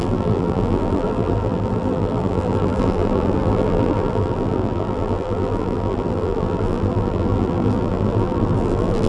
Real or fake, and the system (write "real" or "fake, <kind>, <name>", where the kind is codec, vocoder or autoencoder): fake, vocoder, BigVGAN v2